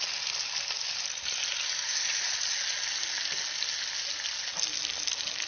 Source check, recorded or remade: recorded